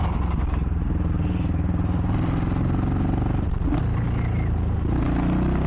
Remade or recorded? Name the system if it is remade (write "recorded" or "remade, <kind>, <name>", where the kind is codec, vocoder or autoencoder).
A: recorded